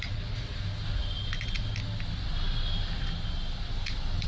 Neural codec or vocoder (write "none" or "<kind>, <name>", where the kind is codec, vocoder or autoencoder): none